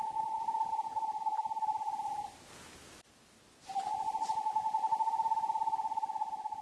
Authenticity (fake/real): real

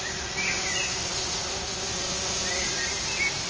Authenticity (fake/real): real